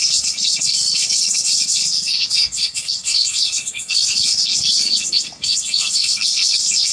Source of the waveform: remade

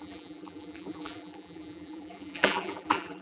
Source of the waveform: remade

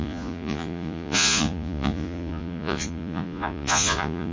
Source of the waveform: remade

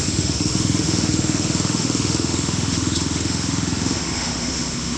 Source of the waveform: remade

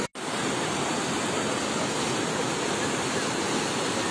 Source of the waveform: recorded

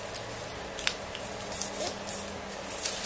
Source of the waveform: recorded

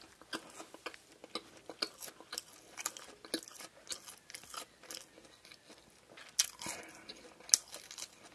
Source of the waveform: recorded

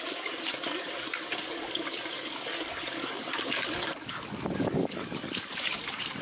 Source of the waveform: remade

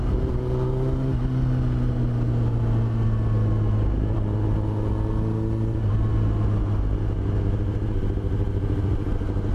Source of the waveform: recorded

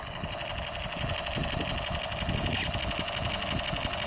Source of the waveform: recorded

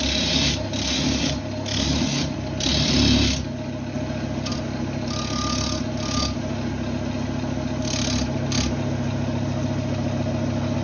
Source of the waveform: recorded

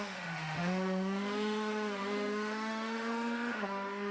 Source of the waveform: remade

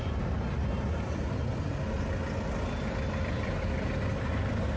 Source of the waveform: recorded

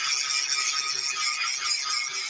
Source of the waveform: recorded